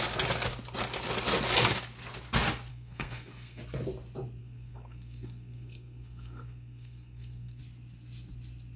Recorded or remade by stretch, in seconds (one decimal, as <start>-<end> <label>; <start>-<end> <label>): 0.0-2.7 recorded; 2.7-3.6 remade; 3.6-4.4 recorded; 4.4-7.6 remade; 7.6-8.8 recorded